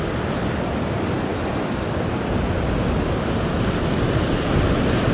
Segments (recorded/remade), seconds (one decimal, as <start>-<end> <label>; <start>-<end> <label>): 0.0-5.1 recorded